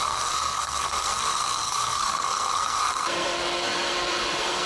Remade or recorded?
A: remade